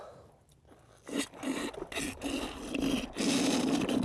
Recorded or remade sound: recorded